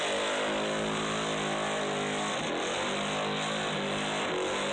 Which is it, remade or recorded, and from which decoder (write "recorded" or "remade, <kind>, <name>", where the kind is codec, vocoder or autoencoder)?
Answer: recorded